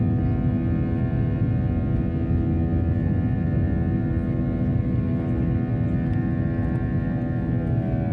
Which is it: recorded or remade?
recorded